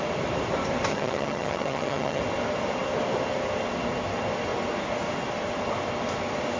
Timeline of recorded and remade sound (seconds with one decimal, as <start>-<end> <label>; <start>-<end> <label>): 0.0-0.9 recorded; 0.9-2.2 remade; 2.2-6.6 recorded